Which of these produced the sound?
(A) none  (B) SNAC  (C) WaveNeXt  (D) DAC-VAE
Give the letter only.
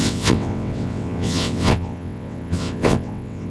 C